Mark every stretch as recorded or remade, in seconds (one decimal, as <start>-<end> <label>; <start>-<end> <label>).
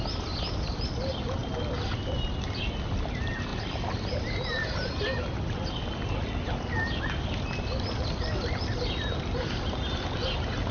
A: 0.0-10.7 recorded